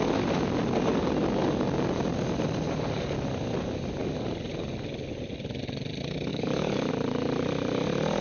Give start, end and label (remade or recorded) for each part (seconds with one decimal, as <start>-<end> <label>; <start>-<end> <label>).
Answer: 0.0-6.3 recorded; 6.3-6.9 remade; 6.9-8.2 recorded